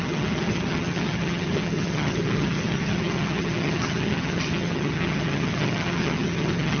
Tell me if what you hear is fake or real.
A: fake